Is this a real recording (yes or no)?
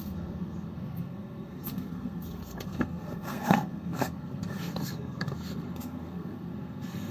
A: no